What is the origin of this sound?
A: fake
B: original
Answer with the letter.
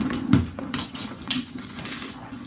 A